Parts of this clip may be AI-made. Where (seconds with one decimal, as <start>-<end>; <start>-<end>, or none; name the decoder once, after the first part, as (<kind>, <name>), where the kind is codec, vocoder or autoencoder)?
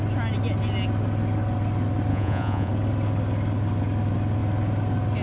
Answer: 2.1-2.7 (vocoder, Vocos)